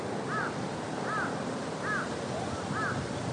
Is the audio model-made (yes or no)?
no